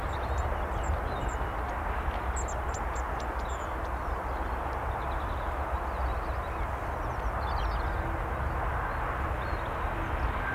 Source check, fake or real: real